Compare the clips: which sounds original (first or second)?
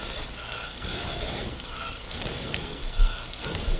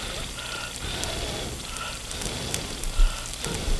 second